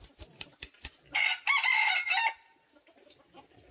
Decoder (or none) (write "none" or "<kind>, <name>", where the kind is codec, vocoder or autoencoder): none